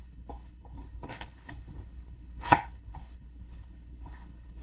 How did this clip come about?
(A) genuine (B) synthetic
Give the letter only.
B